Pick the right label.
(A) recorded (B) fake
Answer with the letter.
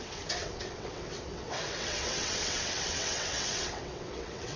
B